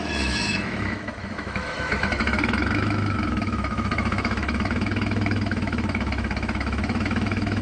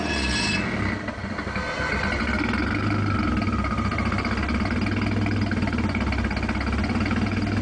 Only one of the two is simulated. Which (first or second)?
first